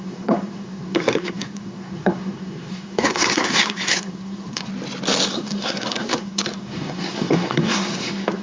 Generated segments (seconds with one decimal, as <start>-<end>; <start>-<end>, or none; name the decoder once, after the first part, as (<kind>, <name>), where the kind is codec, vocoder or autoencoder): 0.0-4.7 (codec, SNAC); 5.3-8.4